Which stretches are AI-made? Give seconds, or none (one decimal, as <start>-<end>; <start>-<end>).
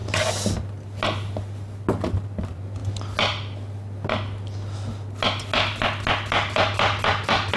2.1-2.8